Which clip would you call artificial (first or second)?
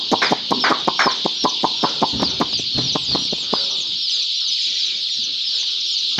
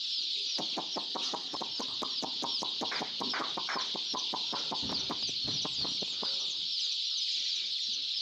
second